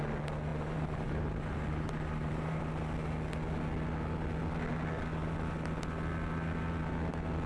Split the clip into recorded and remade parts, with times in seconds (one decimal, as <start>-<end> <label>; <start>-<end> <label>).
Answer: 0.0-0.5 recorded; 0.5-2.6 remade; 2.6-7.5 recorded